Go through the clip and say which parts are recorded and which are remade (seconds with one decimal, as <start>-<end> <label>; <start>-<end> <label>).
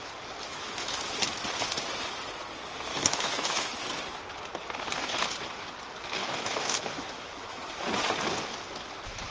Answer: 0.0-0.5 recorded; 0.5-1.0 remade; 1.0-2.9 recorded; 2.9-3.7 remade; 3.7-6.2 recorded; 6.2-7.6 remade; 7.6-9.3 recorded